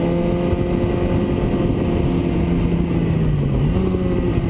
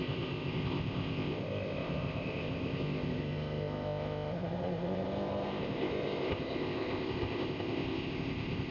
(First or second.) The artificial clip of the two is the second